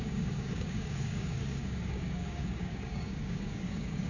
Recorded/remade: remade